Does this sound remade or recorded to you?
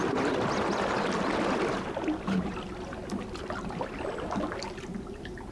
recorded